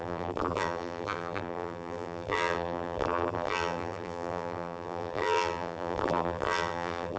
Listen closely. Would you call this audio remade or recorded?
remade